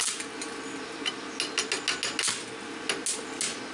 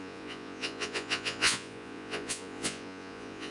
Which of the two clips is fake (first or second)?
second